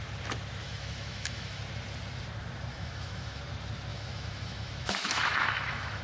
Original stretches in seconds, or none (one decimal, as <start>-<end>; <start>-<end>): 0.0-0.6; 1.6-2.7; 3.4-3.9